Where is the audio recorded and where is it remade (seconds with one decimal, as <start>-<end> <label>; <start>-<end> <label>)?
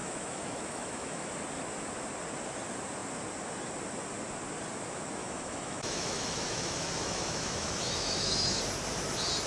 0.0-1.3 remade; 1.3-5.2 recorded; 5.2-8.6 remade; 8.6-9.5 recorded